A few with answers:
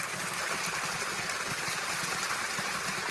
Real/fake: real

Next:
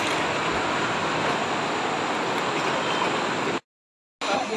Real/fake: real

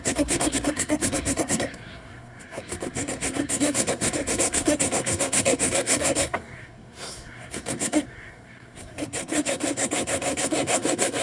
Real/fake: fake